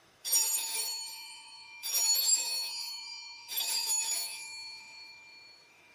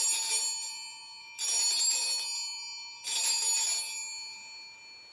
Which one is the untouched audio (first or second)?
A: second